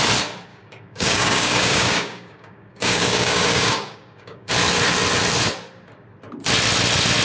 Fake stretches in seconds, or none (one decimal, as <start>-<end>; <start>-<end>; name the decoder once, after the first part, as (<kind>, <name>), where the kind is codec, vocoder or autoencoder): 0.5-4.5 (codec, DAC)